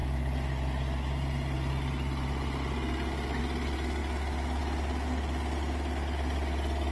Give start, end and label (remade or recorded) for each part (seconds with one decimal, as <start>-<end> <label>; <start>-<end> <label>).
0.0-6.9 recorded